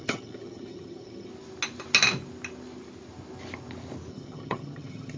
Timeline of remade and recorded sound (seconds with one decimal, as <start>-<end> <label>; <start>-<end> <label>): 0.0-1.3 remade; 1.3-4.1 recorded; 4.1-5.2 remade